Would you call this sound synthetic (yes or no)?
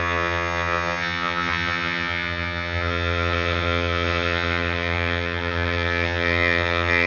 yes